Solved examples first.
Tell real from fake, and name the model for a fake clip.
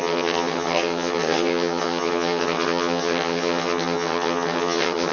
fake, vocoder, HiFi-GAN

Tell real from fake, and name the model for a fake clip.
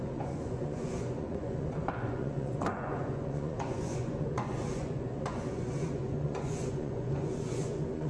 fake, vocoder, Vocos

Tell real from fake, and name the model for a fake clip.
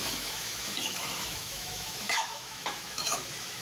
fake, autoencoder, DAC-VAE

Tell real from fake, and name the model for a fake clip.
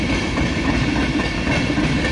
real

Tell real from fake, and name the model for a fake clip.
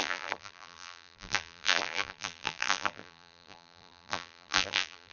fake, vocoder, BigVGAN v2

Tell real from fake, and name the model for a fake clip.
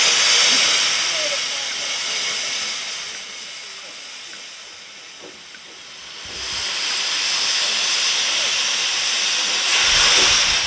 real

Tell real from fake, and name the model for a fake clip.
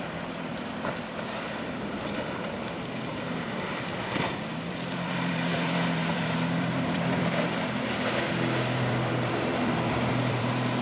fake, vocoder, BigVGAN v2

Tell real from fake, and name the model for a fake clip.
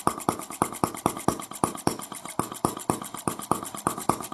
real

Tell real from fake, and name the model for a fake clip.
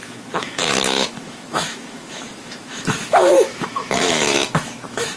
fake, autoencoder, DAC-VAE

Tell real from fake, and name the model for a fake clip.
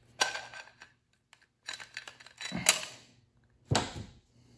real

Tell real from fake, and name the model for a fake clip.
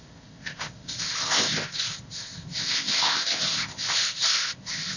fake, codec, ZipCodec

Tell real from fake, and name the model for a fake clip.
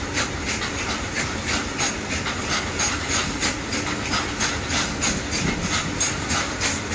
real